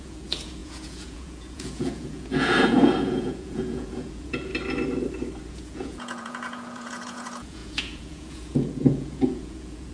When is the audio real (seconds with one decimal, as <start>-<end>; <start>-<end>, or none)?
4.5-5.5